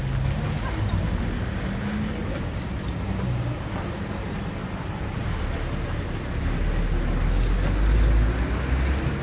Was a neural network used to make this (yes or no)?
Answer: no